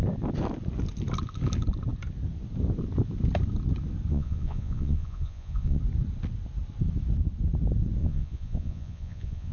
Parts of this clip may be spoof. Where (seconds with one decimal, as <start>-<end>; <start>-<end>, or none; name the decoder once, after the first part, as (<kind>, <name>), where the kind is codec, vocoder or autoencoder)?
4.1-5.8 (vocoder, Vocos); 8.0-9.5